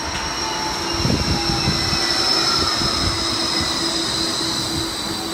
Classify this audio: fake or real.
real